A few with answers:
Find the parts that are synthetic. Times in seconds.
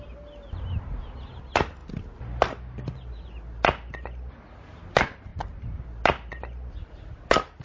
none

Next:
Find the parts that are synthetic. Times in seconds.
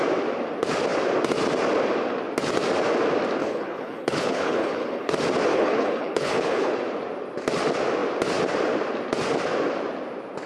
3.4-5.1; 5.5-6.7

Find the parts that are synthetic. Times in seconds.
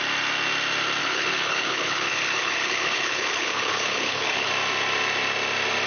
1.0-4.5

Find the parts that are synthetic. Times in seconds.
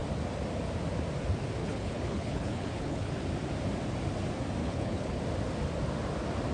1.6-3.1; 4.6-5.2